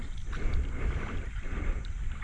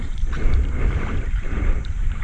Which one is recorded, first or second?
first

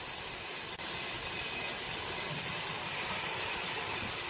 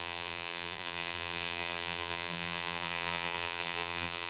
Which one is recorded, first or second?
first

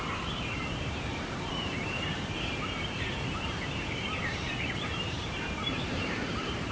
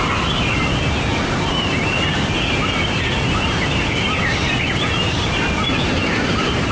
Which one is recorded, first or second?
second